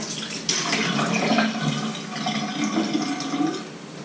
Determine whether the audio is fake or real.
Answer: real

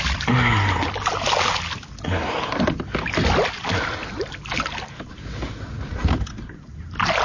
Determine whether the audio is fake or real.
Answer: real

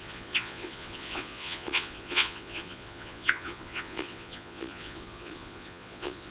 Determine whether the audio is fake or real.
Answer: fake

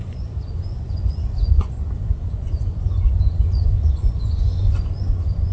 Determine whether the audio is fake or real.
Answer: fake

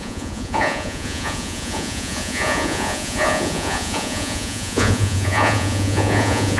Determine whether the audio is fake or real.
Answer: fake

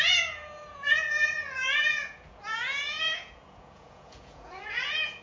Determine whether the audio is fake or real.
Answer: fake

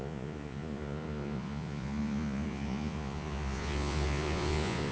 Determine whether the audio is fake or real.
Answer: fake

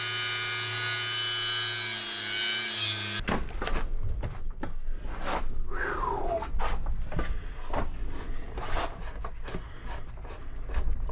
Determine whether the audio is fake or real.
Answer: real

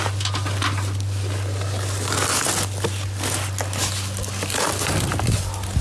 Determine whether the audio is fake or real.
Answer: real